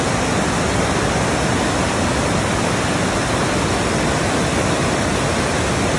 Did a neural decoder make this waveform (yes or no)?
no